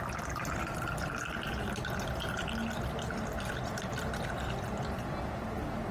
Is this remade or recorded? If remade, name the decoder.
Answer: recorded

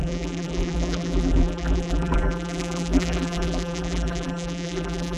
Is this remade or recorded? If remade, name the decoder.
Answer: remade, vocoder, BigVGAN v2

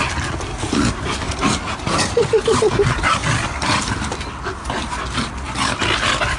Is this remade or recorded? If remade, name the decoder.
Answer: recorded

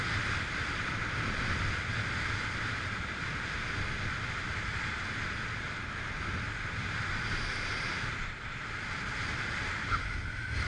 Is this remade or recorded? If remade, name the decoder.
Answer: recorded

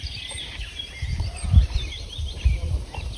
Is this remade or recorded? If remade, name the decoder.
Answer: remade, vocoder, BigVGAN v2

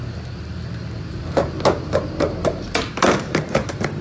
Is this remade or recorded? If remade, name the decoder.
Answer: remade, vocoder, BigVGAN v2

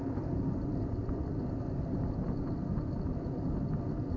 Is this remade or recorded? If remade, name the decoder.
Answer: recorded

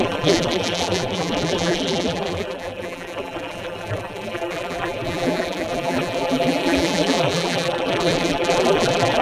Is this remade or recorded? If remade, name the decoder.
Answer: remade, vocoder, BigVGAN v2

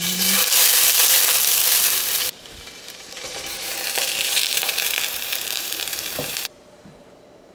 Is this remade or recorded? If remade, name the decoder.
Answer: remade, vocoder, BigVGAN v2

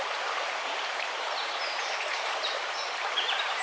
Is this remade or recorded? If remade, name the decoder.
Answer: remade, vocoder, BigVGAN v2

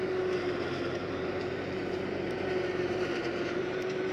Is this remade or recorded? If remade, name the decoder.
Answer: remade, vocoder, BigVGAN v2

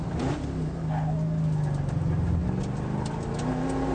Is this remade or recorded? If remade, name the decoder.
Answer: recorded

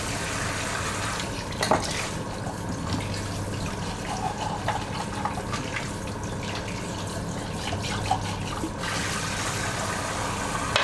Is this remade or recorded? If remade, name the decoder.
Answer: recorded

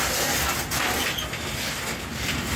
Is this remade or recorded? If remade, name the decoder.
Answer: recorded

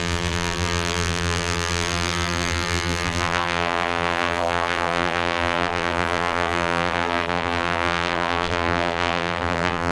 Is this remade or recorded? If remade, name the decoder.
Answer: remade, vocoder, BigVGAN v2